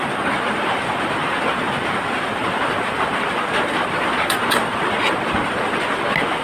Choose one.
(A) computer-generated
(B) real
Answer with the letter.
B